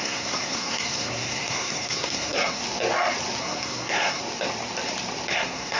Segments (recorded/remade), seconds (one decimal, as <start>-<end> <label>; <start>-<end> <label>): 0.0-2.6 remade; 2.6-3.4 recorded; 3.4-4.2 remade; 4.2-5.3 recorded; 5.3-5.8 remade

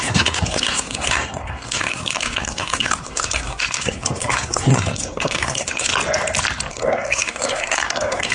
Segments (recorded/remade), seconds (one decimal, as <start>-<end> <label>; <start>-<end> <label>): 0.0-5.9 remade; 5.9-6.7 recorded; 6.7-8.3 remade

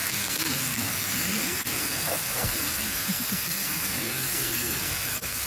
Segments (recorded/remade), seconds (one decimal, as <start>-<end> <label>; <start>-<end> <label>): 0.0-5.5 remade

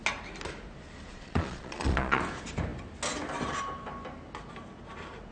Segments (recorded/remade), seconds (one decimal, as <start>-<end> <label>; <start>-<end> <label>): 0.0-1.1 recorded; 1.1-2.2 remade; 2.2-5.3 recorded

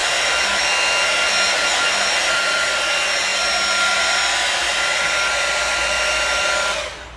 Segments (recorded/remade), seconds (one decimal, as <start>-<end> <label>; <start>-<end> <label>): 0.0-7.2 recorded

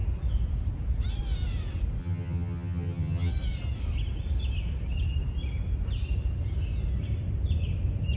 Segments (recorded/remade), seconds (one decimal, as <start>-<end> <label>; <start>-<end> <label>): 0.0-2.0 recorded; 2.0-3.3 remade; 3.3-8.2 recorded

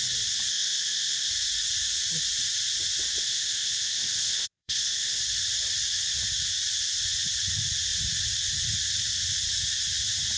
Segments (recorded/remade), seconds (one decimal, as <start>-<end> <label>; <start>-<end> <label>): 0.0-0.5 recorded; 0.5-1.3 remade; 1.3-3.2 recorded; 3.2-5.2 remade; 5.2-10.4 recorded